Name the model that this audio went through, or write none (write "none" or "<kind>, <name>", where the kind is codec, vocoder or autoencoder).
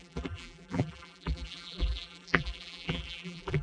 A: vocoder, BigVGAN v2